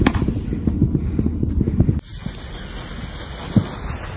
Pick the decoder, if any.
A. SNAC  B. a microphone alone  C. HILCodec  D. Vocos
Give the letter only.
B